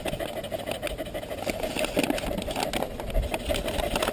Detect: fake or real real